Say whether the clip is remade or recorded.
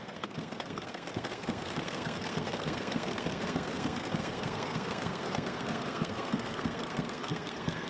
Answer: remade